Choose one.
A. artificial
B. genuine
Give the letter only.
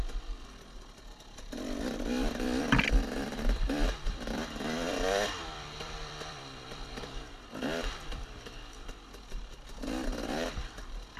A